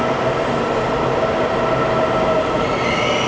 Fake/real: real